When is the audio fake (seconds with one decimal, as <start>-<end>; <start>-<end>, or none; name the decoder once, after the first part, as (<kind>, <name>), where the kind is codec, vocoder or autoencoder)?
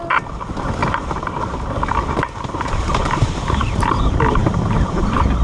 0.8-4.0 (vocoder, BigVGAN v2)